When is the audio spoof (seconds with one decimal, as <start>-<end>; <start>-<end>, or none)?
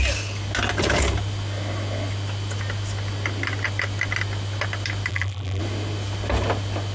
5.1-5.6